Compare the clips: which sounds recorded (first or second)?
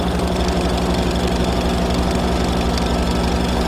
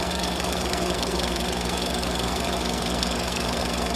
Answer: first